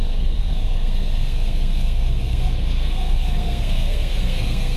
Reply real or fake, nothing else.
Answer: fake